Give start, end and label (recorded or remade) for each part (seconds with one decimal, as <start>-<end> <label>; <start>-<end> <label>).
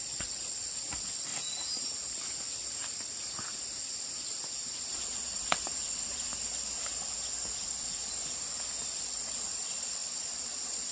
0.0-1.3 remade; 1.3-4.9 recorded; 4.9-6.3 remade; 6.3-7.5 recorded; 7.5-8.0 remade; 8.0-9.0 recorded; 9.0-10.9 remade